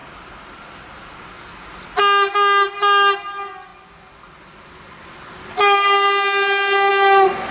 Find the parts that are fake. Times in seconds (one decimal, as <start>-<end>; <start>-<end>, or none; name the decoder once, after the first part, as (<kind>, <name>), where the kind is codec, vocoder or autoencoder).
none